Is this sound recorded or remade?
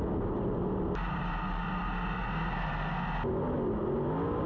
recorded